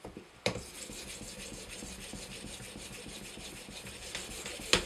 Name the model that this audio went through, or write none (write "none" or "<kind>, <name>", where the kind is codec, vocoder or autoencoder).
none